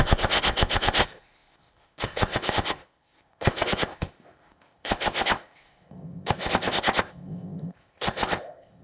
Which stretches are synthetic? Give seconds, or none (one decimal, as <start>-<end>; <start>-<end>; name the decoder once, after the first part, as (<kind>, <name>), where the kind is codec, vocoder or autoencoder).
0.0-8.8 (codec, ZipCodec)

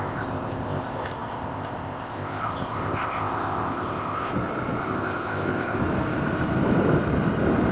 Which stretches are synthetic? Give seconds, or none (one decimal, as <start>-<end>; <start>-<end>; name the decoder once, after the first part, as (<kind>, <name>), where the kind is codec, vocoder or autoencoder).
0.0-4.3 (codec, ZipCodec); 4.8-5.8

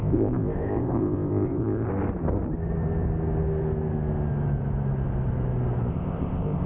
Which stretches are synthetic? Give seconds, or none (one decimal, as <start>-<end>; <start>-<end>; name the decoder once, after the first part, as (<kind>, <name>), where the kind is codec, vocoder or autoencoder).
0.0-1.9 (codec, ZipCodec); 5.9-6.7

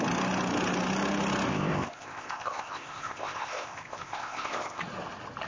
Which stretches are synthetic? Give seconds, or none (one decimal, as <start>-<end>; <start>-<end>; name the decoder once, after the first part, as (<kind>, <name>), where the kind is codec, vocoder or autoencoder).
1.5-4.8 (codec, ZipCodec)

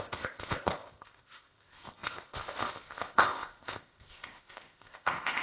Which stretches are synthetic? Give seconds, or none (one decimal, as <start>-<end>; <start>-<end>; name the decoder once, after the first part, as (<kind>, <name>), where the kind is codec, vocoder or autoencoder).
0.0-5.4 (codec, ZipCodec)

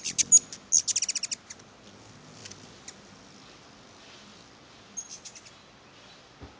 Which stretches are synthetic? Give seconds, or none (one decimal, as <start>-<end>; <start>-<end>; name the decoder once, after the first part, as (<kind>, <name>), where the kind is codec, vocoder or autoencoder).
none